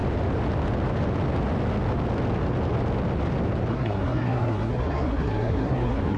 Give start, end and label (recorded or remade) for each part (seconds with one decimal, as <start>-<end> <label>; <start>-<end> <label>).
0.0-3.7 recorded; 3.7-6.2 remade